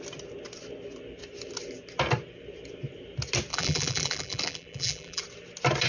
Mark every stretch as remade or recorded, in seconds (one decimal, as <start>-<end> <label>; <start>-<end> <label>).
0.0-3.5 recorded; 3.5-5.2 remade; 5.2-5.9 recorded